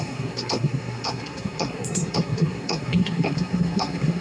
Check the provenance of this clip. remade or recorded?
remade